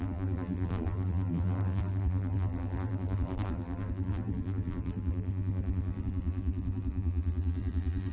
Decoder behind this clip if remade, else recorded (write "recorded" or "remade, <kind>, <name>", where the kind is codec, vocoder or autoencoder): remade, vocoder, BigVGAN v2